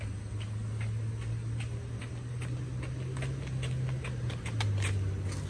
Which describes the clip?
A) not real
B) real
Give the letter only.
B